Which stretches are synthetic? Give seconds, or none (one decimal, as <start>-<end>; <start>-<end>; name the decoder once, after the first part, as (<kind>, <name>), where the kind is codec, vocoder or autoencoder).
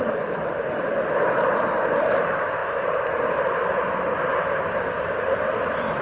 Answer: 0.0-6.0 (vocoder, BigVGAN v2)